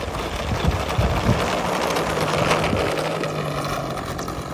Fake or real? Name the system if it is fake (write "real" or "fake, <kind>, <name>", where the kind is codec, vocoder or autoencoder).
real